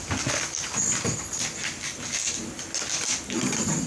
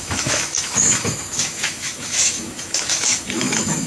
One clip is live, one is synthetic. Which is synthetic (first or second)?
second